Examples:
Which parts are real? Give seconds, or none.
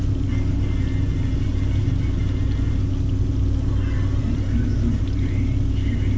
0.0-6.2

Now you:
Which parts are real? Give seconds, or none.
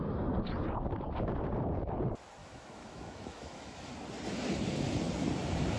0.0-2.4; 3.9-5.8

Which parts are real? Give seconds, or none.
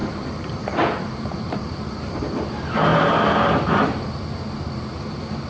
2.5-2.9; 3.8-5.5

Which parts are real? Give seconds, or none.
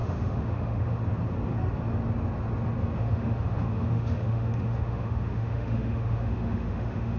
1.0-3.0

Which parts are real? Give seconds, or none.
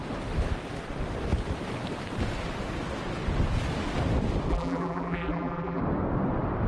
0.0-4.5; 5.8-6.7